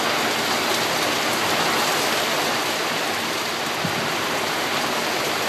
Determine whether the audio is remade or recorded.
recorded